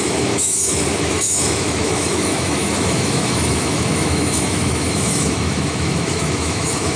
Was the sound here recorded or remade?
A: remade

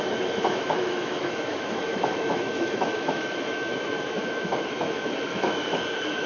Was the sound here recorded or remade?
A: remade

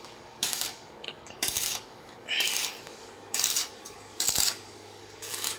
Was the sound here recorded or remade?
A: remade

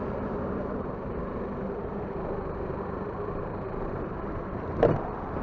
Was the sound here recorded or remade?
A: remade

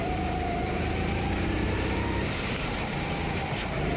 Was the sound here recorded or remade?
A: remade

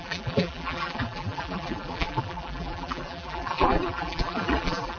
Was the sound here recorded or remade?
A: remade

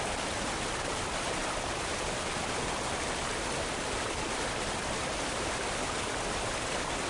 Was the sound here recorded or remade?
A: recorded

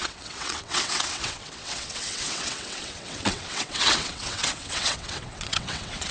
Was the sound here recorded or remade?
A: remade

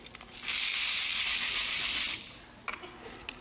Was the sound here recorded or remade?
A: recorded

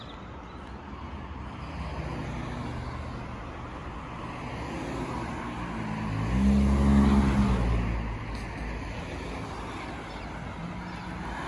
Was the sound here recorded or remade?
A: recorded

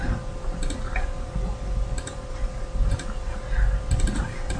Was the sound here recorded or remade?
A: recorded